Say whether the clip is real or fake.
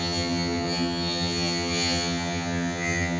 fake